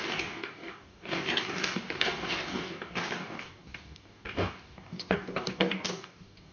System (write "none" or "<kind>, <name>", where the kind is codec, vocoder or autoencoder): codec, DAC